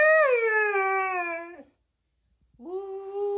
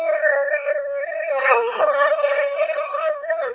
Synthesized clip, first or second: second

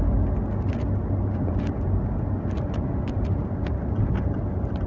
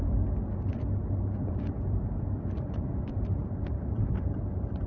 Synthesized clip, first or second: second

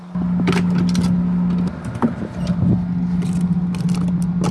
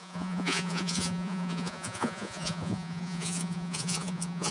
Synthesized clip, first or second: second